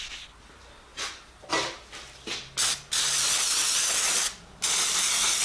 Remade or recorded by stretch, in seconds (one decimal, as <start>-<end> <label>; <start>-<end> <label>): 0.0-5.4 recorded